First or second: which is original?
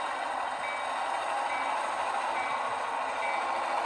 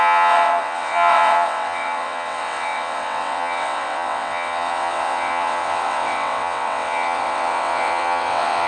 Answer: first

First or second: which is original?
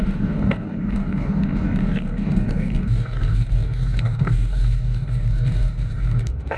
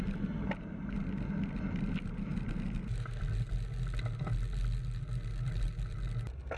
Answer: second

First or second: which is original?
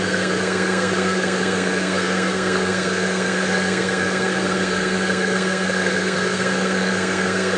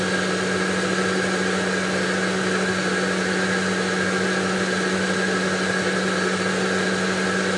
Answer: second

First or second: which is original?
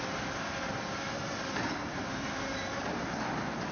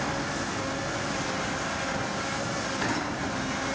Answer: second